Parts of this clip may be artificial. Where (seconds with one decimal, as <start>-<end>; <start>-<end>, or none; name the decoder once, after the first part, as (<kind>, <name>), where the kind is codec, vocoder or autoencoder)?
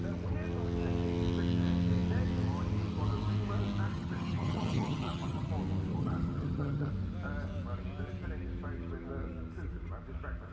3.9-5.5 (vocoder, HiFi-GAN); 5.9-6.9